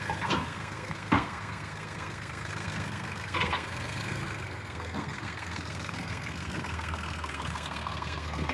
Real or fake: fake